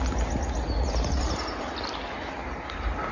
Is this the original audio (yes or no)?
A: yes